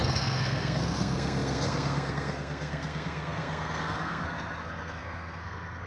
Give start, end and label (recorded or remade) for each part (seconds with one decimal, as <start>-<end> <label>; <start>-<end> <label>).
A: 0.0-5.9 remade